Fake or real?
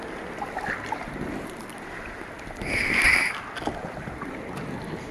real